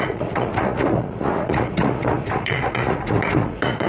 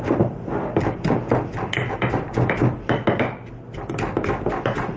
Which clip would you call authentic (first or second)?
second